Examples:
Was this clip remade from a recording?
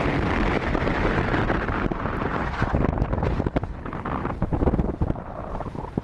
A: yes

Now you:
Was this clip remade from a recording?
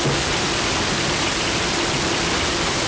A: no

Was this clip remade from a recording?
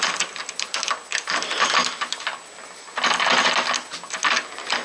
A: no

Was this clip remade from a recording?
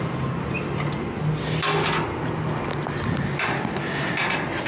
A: no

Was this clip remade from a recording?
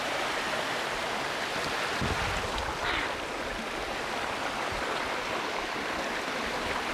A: no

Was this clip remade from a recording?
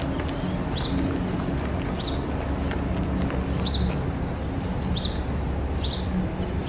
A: no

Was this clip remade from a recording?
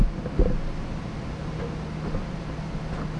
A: no